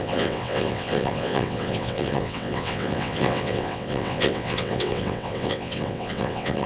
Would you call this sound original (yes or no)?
no